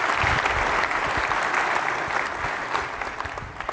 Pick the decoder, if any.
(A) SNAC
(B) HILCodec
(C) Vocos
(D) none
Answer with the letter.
D